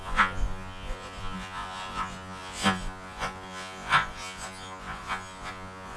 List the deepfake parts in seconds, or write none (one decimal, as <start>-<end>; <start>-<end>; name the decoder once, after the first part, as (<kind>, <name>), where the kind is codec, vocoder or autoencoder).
0.0-6.0 (vocoder, Vocos)

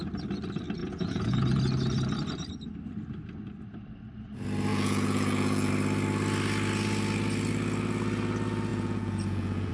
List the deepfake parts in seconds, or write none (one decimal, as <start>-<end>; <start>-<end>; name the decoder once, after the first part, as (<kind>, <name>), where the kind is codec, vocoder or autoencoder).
0.8-1.6 (vocoder, Vocos); 4.7-5.7; 8.7-9.7